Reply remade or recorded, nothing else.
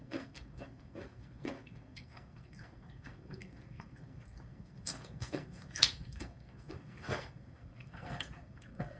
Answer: remade